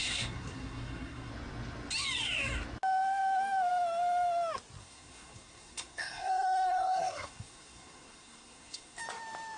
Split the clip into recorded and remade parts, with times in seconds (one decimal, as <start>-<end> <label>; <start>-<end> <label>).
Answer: 0.0-1.3 remade; 1.3-4.8 recorded; 4.8-9.0 remade; 9.0-9.6 recorded